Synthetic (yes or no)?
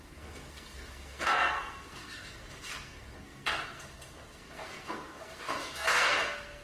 yes